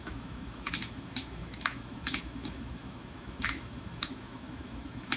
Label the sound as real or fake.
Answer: fake